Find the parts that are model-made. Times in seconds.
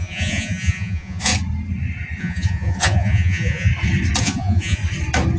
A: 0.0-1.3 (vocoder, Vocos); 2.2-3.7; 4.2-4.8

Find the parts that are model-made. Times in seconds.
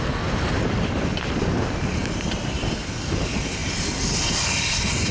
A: none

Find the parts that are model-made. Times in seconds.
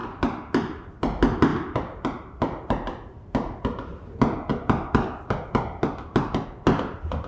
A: none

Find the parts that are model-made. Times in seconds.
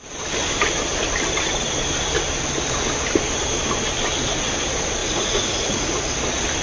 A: 5.0-6.1 (vocoder, Vocos)